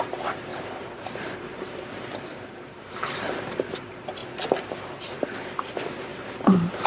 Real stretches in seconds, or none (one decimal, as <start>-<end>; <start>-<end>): 0.0-0.5; 2.9-6.1